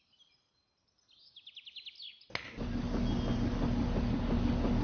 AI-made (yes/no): no